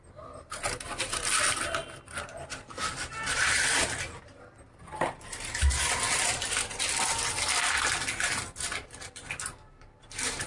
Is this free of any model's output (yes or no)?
yes